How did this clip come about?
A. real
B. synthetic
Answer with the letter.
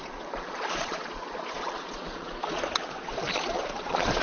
B